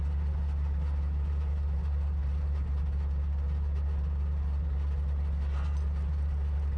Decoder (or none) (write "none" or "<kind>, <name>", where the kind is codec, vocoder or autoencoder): none